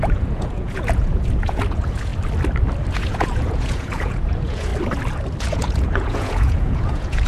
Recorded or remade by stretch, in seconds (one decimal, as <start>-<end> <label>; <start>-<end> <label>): 0.0-2.1 remade; 2.1-2.9 recorded; 2.9-4.7 remade; 4.7-5.4 recorded; 5.4-7.3 remade